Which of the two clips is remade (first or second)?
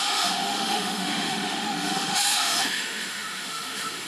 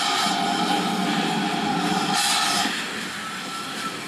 first